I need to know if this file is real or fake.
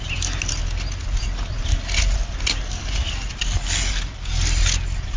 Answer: real